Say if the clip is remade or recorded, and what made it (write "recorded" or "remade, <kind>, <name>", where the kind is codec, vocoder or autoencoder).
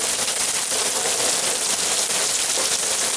recorded